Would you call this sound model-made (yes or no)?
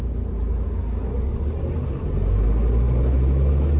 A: no